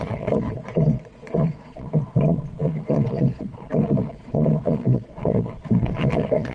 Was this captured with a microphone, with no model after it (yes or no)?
no